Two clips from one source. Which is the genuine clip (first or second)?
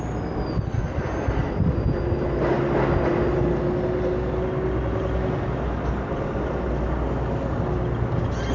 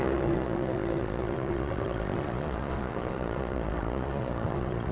first